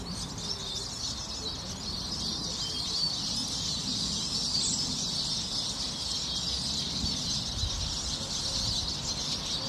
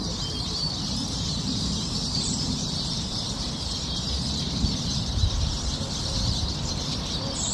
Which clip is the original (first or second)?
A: first